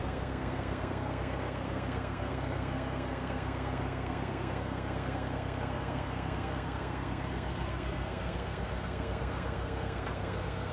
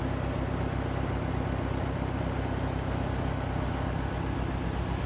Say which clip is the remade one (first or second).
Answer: first